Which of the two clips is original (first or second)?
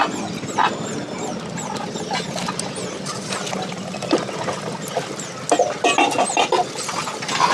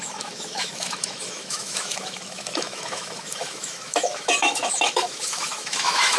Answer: first